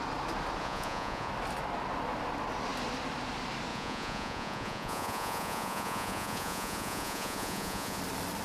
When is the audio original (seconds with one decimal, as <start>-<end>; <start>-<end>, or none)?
0.0-0.6; 1.3-3.7; 8.0-8.4

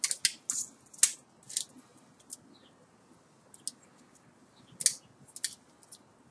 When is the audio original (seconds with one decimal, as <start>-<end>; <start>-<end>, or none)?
0.0-6.3

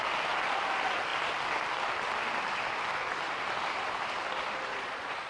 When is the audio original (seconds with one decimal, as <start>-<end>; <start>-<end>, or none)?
0.0-4.7

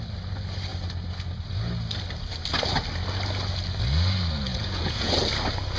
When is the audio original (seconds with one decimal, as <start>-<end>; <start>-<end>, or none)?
0.0-4.5; 5.1-5.8

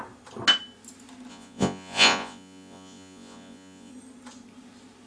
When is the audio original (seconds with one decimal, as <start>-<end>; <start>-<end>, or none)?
0.0-1.3; 3.9-5.1